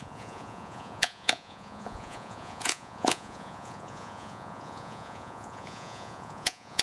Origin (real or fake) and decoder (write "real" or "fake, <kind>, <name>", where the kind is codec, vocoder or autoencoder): fake, vocoder, Vocos